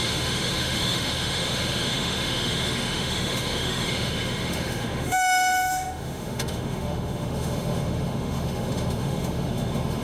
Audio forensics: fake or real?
fake